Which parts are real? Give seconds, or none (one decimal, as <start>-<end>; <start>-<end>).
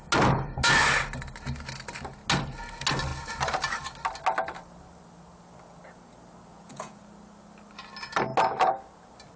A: 0.0-6.5; 7.0-9.4